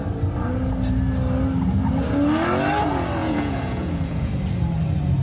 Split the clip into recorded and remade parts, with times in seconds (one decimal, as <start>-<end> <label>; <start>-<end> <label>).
0.0-3.2 recorded; 3.2-4.3 remade; 4.3-5.2 recorded